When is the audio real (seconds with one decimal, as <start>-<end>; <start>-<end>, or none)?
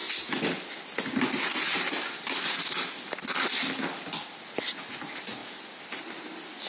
0.0-6.7